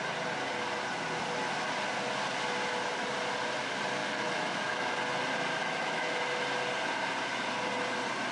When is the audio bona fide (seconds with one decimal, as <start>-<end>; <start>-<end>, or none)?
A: 0.0-4.0; 5.0-5.6; 6.1-8.3